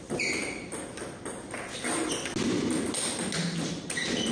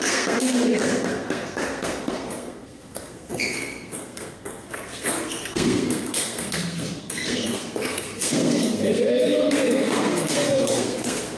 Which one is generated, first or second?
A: second